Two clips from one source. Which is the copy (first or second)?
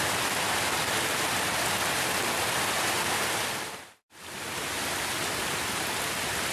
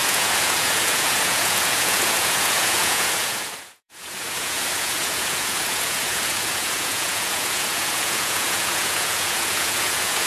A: second